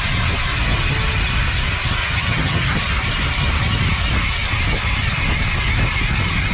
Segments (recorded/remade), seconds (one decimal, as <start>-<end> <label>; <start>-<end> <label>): 0.0-2.0 recorded; 2.0-2.8 remade; 2.8-6.5 recorded

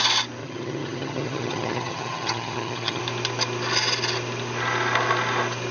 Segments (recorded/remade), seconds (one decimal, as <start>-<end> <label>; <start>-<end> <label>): 0.0-0.4 recorded; 0.4-3.0 remade; 3.0-5.7 recorded

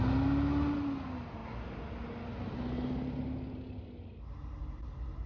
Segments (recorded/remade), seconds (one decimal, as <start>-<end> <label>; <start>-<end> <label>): 0.0-5.3 recorded

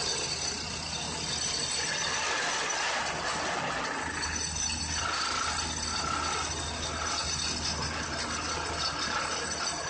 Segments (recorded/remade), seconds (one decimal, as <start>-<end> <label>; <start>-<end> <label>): 0.0-9.9 recorded

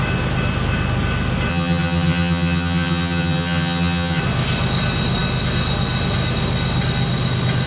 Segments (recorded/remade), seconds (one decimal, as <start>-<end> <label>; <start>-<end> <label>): 0.0-1.5 recorded; 1.5-4.2 remade; 4.2-7.7 recorded